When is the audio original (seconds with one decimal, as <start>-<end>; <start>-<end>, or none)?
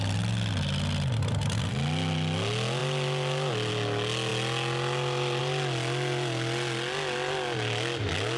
0.0-8.4